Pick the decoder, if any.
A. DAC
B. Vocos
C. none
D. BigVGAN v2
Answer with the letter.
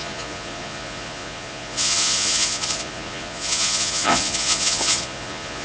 B